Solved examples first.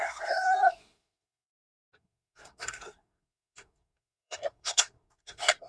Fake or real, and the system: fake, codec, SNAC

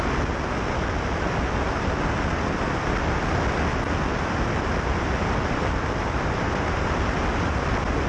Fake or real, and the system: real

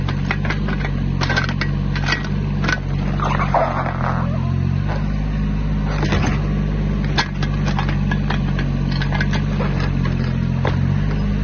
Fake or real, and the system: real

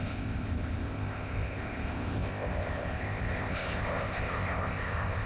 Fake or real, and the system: fake, codec, ZipCodec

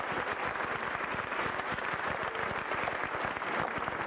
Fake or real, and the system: real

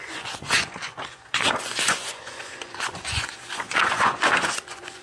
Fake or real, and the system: fake, vocoder, Vocos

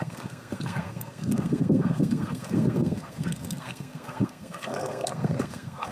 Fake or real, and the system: fake, codec, SNAC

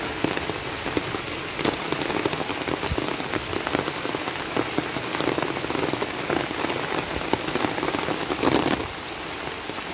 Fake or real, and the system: real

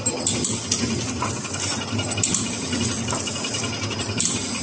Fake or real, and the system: real